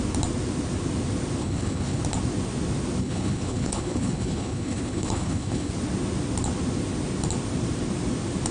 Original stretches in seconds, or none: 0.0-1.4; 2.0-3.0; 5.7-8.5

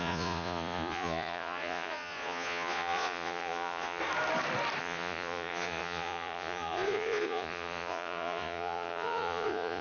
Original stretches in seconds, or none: 4.0-4.8

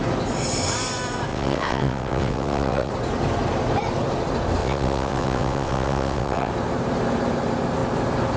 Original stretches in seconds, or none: 0.0-1.3; 2.9-4.6; 6.5-8.4

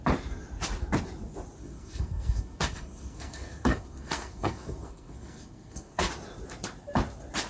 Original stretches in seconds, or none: 0.0-1.6; 6.1-7.5

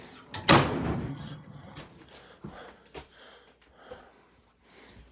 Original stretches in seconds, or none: 0.0-1.1; 1.8-5.1

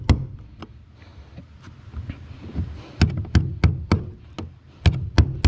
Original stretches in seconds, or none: 0.0-5.5

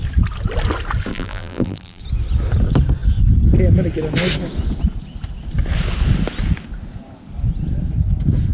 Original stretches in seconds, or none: 0.0-1.1; 2.0-8.5

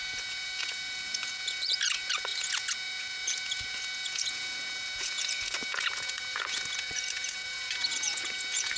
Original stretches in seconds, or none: none